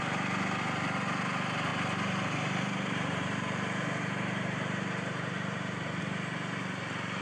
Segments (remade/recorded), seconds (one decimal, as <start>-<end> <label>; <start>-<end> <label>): 0.0-1.7 recorded; 1.7-6.0 remade; 6.0-7.2 recorded